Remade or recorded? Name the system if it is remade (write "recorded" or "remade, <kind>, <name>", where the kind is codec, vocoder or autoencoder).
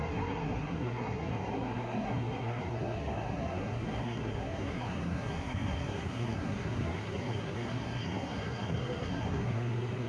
remade, codec, SNAC